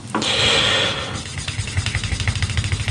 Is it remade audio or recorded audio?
recorded